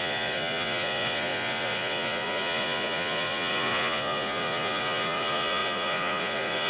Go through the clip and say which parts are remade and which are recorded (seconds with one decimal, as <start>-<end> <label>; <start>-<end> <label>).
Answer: 0.0-6.7 remade